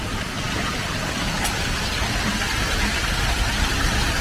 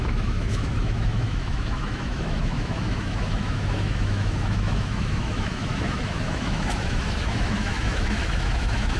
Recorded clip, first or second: first